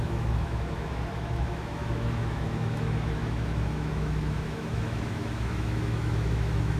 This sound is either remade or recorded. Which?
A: remade